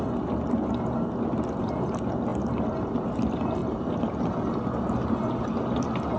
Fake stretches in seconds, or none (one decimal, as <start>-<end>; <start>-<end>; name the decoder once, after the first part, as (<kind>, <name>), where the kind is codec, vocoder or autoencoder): none